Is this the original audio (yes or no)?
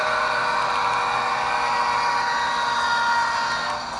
yes